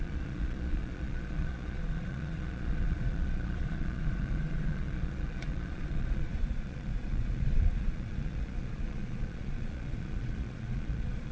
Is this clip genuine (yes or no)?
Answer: no